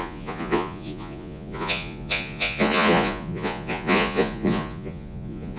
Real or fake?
fake